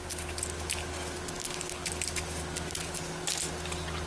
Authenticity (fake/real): real